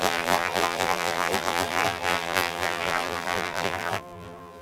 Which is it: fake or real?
fake